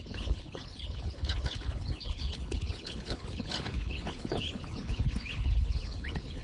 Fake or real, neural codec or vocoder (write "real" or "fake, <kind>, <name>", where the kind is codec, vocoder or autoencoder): fake, codec, HILCodec